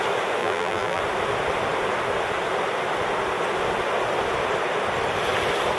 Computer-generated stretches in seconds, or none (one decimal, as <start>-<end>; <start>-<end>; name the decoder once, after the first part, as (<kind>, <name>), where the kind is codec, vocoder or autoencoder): 0.4-1.0 (vocoder, BigVGAN v2)